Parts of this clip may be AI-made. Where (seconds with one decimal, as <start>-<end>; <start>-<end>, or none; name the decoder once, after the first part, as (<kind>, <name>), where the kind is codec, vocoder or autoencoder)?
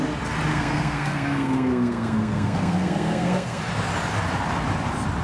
0.5-3.6 (codec, SNAC)